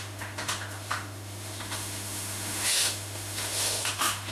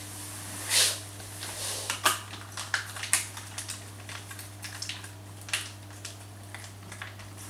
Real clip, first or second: second